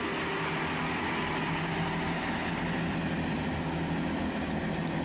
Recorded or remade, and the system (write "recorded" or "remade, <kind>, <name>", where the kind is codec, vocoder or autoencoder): recorded